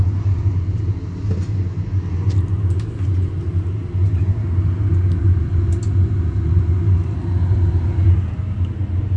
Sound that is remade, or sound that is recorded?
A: recorded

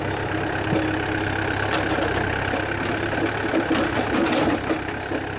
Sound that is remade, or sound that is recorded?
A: recorded